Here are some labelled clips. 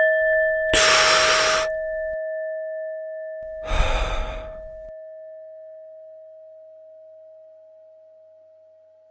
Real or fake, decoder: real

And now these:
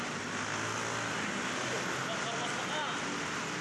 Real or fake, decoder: real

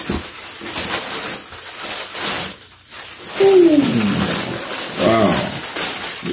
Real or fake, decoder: real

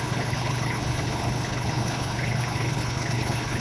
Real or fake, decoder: fake, codec, HILCodec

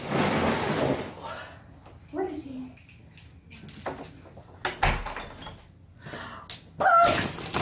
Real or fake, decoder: real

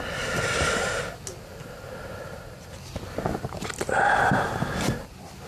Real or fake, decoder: real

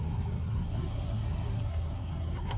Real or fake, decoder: fake, codec, SNAC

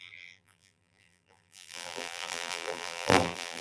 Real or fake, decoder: fake, vocoder, BigVGAN v2